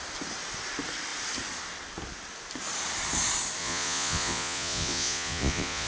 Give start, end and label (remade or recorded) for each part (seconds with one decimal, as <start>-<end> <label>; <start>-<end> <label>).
0.0-3.6 recorded; 3.6-5.9 remade